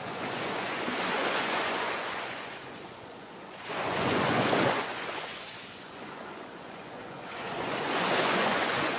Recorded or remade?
remade